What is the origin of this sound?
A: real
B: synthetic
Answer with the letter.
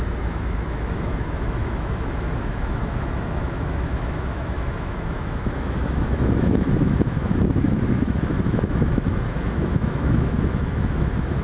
B